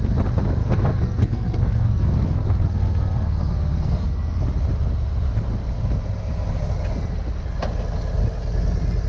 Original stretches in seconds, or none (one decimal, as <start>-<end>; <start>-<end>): 0.0-0.6; 4.4-9.1